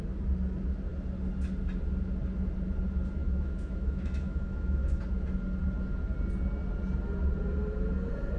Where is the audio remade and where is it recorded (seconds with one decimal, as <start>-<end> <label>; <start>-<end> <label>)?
0.0-3.2 recorded; 3.2-5.0 remade; 5.0-8.4 recorded